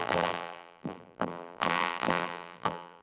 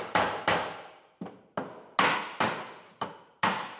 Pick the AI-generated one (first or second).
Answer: first